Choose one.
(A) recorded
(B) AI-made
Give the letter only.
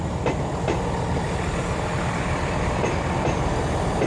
A